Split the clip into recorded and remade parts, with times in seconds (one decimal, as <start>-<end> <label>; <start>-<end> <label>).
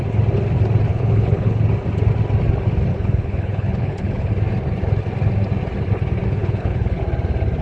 0.0-0.9 recorded; 0.9-1.6 remade; 1.6-2.9 recorded; 2.9-4.3 remade; 4.3-6.4 recorded; 6.4-7.0 remade; 7.0-7.6 recorded